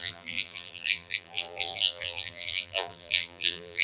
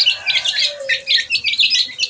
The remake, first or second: first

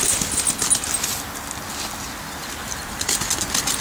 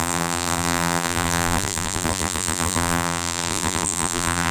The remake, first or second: second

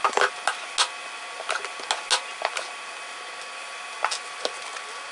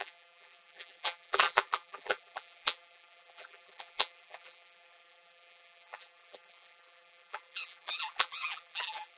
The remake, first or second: second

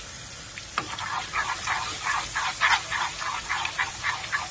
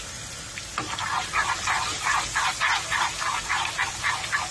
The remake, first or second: first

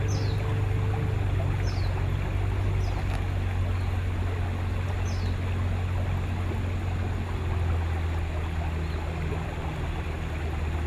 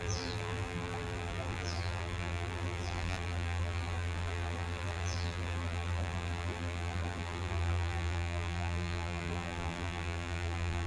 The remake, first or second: second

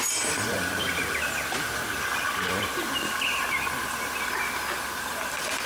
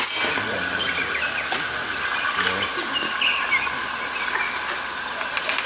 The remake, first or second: first